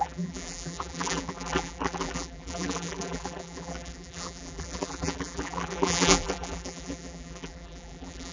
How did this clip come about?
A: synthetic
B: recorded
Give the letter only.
A